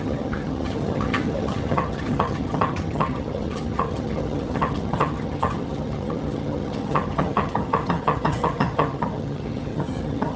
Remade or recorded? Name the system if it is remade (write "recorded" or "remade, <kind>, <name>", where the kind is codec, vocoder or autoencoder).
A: remade, vocoder, HiFi-GAN